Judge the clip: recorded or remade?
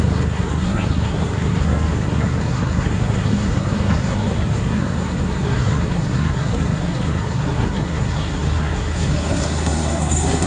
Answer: remade